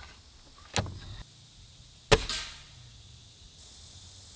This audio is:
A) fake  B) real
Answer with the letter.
B